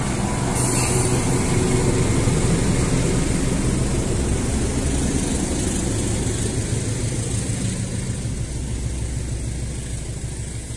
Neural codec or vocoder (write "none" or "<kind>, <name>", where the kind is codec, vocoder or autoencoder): none